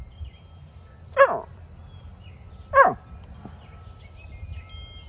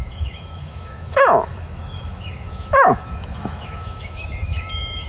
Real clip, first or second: first